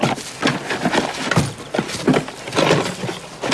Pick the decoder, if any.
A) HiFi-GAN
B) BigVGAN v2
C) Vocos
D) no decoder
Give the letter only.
D